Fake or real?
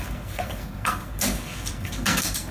fake